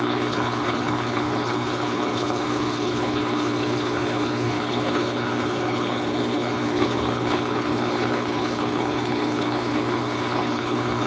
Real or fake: fake